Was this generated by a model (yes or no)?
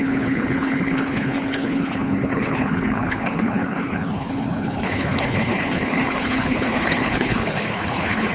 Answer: yes